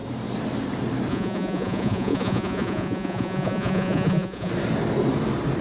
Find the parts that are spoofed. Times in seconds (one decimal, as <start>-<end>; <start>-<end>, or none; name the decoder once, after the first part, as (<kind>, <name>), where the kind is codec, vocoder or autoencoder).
1.1-4.5 (vocoder, Vocos)